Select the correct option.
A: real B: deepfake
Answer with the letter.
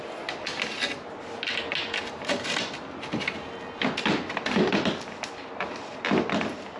A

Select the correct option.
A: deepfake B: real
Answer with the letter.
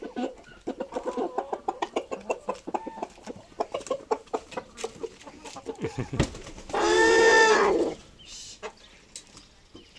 B